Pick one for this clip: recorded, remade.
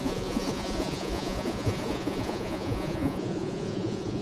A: remade